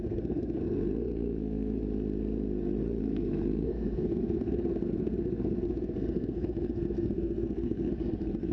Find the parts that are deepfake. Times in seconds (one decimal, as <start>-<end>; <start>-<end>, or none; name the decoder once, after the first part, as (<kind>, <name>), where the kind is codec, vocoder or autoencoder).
0.0-1.8 (codec, SNAC); 3.0-8.5